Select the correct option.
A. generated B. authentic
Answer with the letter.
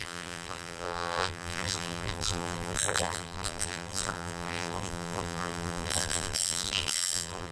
A